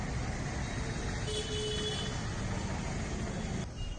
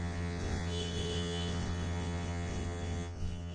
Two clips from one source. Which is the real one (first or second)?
first